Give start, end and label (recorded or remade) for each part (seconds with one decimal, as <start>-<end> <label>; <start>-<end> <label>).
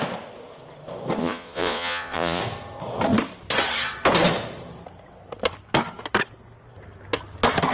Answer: 0.0-1.2 recorded; 1.2-2.4 remade; 2.4-7.7 recorded